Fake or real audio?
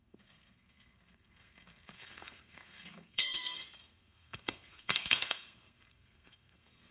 fake